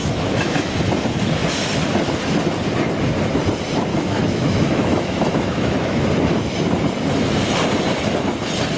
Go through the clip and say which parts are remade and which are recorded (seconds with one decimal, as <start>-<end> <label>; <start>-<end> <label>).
0.0-0.7 remade; 0.7-3.9 recorded; 3.9-6.0 remade; 6.0-8.8 recorded